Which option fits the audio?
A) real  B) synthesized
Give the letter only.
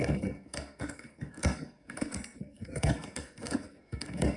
B